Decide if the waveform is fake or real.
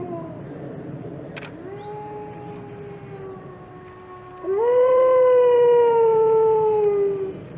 fake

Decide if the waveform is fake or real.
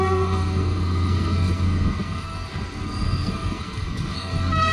fake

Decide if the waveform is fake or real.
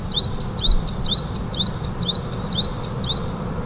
real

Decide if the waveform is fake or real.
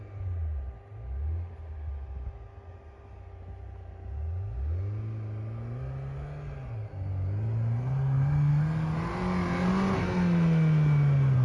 real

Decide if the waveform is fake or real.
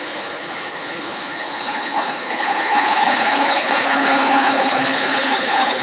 fake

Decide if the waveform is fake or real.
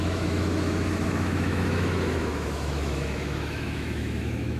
fake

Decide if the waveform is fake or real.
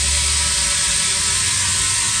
real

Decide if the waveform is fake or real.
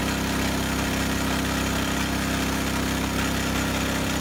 real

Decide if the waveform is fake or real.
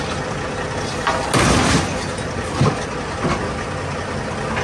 real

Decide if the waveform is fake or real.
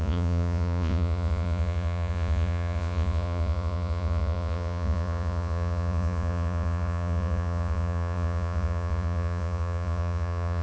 fake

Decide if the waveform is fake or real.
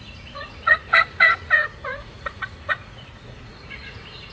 fake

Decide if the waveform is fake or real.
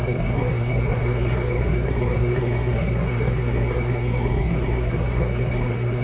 fake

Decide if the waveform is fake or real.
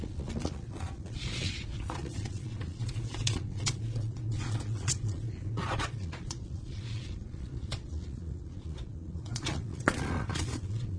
fake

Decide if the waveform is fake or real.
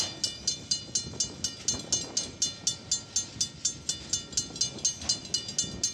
real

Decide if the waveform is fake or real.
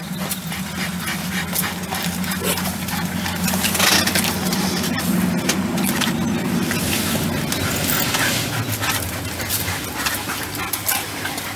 real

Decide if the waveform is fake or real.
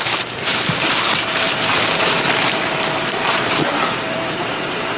fake